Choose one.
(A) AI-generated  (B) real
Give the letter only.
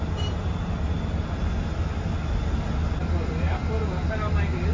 B